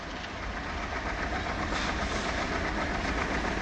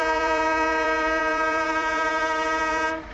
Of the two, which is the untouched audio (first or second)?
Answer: first